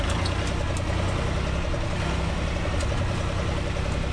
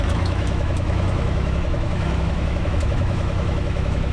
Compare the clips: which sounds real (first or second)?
first